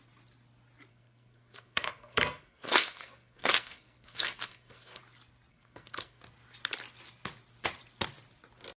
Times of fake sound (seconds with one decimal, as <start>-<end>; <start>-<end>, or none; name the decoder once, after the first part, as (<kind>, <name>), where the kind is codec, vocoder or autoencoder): 0.9-5.0 (codec, SNAC); 5.5-6.2